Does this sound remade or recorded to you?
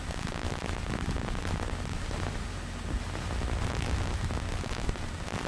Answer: recorded